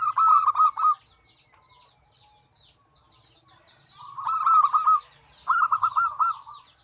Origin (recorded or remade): recorded